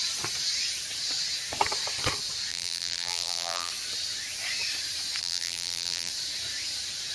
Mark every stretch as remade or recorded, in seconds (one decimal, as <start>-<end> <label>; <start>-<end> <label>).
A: 0.0-2.5 recorded; 2.5-3.7 remade; 3.7-5.2 recorded; 5.2-6.1 remade; 6.1-7.1 recorded